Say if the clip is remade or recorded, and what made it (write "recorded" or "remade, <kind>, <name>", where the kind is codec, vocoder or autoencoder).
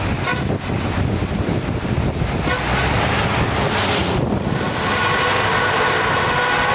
recorded